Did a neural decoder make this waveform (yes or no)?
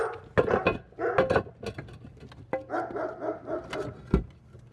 no